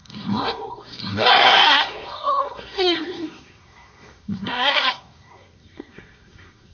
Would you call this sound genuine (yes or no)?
no